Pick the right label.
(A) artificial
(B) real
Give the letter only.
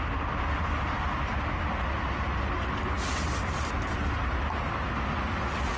B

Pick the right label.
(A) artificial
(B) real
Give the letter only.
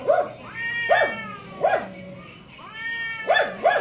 B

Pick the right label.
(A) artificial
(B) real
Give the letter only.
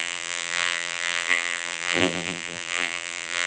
A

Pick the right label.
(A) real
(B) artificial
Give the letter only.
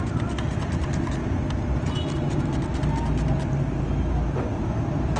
A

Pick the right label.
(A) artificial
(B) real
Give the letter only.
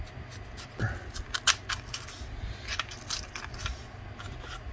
B